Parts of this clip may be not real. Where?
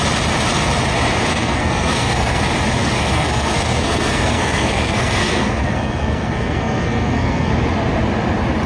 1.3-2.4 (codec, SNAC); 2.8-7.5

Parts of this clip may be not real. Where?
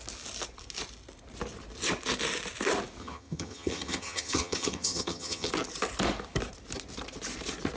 3.0-5.5 (vocoder, HiFi-GAN)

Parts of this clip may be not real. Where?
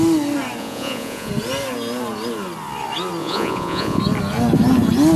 0.6-1.3 (vocoder, Vocos); 3.2-4.0